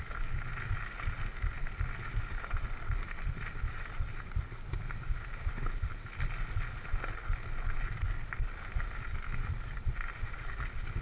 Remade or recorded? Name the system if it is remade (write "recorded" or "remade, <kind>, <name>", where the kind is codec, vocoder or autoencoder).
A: recorded